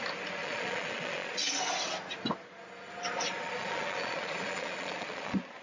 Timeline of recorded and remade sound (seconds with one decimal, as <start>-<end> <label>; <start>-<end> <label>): 0.0-0.4 recorded; 0.4-1.6 remade; 1.6-3.3 recorded; 3.3-5.6 remade